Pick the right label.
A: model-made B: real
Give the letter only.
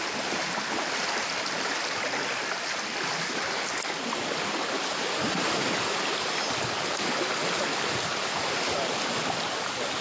B